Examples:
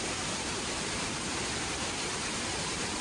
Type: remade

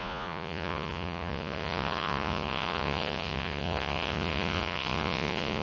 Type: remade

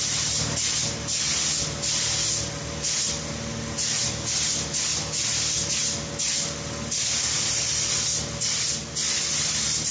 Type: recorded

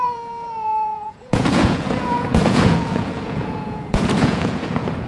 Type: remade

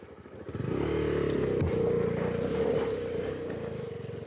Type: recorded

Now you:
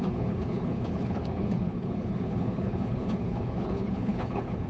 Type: remade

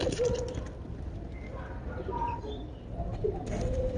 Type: recorded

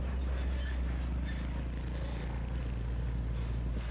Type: recorded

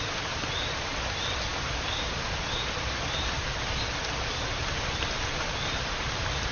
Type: recorded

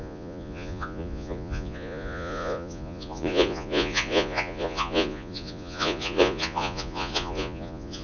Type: remade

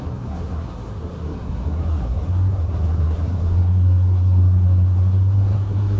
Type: remade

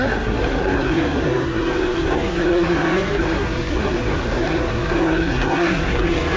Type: remade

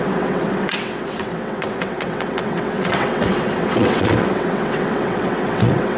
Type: remade